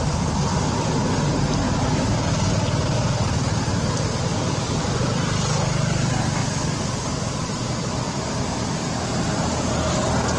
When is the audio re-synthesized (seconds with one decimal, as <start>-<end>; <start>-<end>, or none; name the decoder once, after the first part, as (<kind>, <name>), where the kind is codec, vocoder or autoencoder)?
none

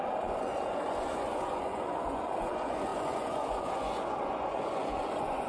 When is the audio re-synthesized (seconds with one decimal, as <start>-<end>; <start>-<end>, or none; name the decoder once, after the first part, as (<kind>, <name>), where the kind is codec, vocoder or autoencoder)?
0.0-5.5 (vocoder, Vocos)

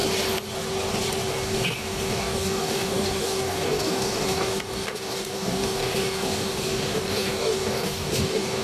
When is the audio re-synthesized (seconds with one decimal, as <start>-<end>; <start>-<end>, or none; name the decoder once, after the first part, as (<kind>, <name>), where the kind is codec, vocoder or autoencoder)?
1.3-8.6 (codec, DAC)